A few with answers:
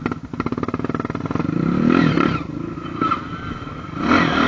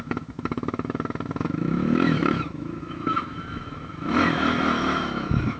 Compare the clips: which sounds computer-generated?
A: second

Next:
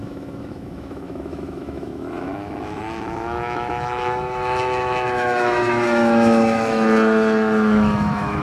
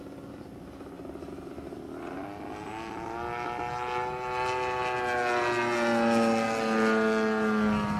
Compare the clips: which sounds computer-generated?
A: first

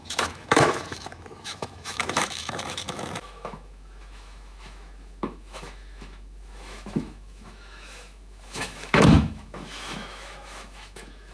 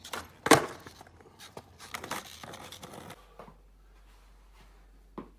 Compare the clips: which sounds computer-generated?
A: first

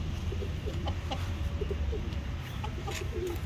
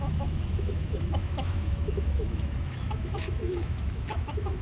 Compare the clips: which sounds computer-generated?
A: second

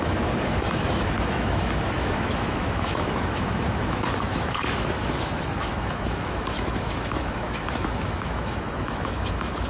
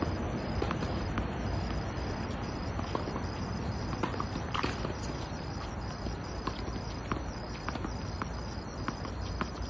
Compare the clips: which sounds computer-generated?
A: first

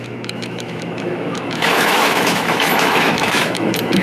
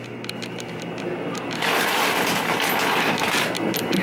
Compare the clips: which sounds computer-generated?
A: first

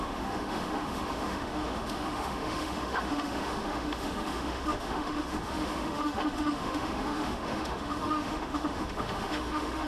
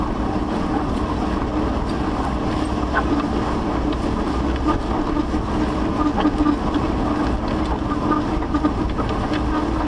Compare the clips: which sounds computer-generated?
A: first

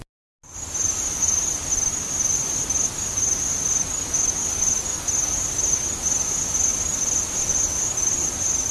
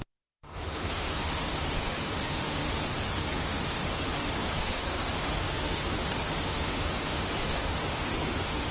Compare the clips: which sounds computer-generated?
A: second